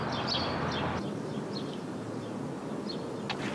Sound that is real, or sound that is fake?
real